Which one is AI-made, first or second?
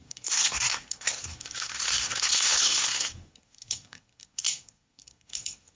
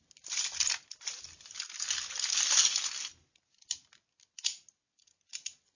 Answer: first